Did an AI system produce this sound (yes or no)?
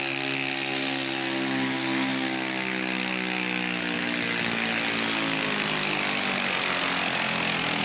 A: no